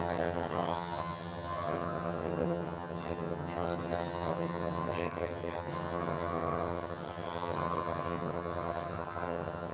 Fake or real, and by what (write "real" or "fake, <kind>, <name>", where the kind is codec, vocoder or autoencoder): fake, vocoder, HiFi-GAN